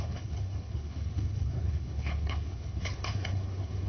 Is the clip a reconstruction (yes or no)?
yes